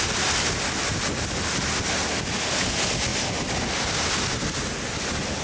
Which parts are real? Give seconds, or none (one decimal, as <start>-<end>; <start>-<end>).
0.0-5.4